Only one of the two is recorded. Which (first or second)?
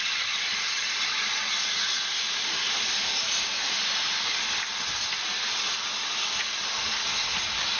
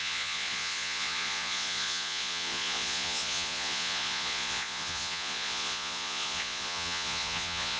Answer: first